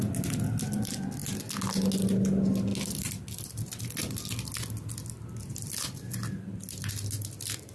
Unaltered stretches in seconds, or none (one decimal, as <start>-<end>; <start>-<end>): 0.0-7.7